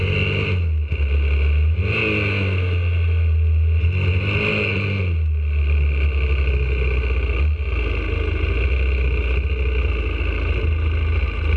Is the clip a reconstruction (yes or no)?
no